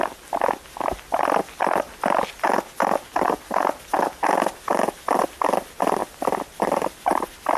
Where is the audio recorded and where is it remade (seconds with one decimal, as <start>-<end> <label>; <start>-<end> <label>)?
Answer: 0.0-7.6 recorded